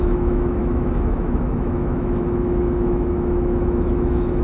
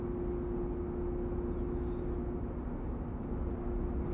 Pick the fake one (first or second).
first